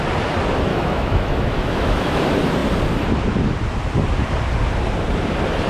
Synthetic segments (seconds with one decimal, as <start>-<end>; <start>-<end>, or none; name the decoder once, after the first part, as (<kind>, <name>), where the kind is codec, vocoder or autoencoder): 0.7-2.2 (autoencoder, DAC-VAE)